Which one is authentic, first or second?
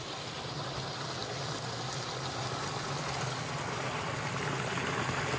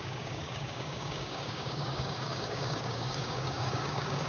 first